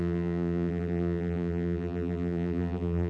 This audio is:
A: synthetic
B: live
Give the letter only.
A